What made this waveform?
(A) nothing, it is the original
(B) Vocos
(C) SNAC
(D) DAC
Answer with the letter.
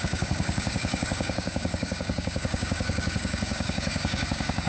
D